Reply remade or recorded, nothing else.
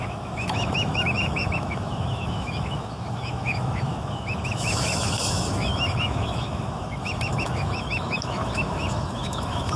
remade